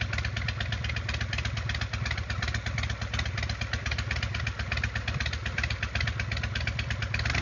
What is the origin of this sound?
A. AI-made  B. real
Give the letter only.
B